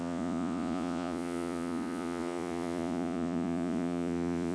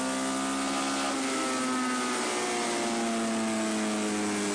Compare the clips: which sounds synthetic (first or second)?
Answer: first